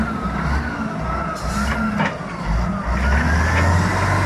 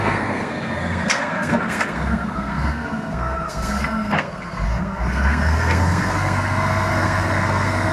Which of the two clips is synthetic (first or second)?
second